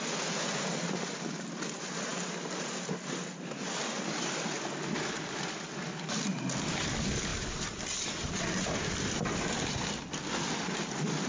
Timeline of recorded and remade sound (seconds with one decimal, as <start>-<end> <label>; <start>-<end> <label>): 0.0-11.3 recorded